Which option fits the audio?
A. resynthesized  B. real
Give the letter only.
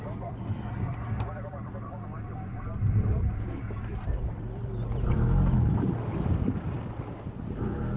A